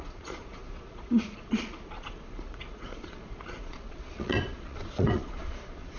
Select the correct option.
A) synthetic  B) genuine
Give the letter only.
A